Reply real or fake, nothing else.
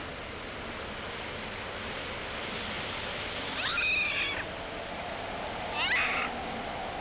real